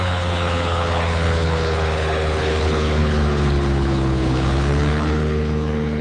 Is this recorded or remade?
remade